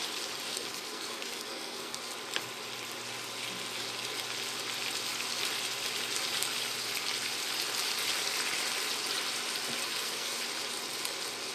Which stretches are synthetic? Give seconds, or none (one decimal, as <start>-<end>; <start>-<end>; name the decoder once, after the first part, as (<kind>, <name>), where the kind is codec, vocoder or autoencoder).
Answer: 0.5-2.0 (codec, SNAC); 9.8-10.4